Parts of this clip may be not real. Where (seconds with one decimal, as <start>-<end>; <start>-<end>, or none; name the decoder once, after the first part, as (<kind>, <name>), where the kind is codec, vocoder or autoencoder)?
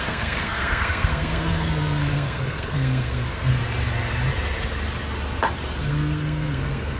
0.0-3.6 (codec, SNAC); 5.8-7.0